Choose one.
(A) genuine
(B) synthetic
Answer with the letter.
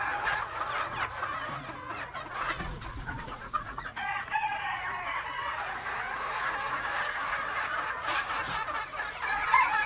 B